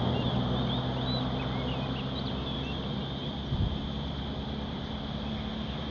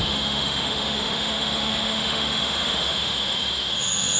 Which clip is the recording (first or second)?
first